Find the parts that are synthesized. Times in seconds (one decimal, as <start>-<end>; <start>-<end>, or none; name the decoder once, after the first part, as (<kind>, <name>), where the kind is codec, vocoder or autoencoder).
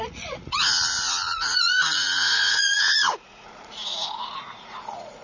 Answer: 0.0-5.2 (vocoder, Vocos)